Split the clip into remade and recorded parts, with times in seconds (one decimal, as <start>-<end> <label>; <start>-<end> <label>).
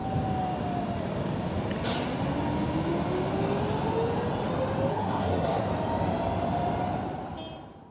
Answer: 0.0-4.9 recorded; 4.9-5.7 remade; 5.7-7.9 recorded